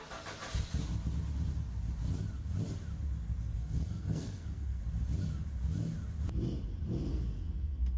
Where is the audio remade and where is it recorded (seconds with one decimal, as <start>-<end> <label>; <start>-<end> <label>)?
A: 0.0-3.5 recorded; 3.5-4.8 remade; 4.8-7.1 recorded; 7.1-8.0 remade